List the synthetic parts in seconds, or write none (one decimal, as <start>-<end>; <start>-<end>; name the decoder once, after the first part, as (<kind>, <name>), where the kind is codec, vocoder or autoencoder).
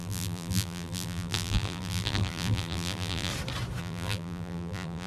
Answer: 0.0-3.3 (vocoder, BigVGAN v2); 3.8-5.1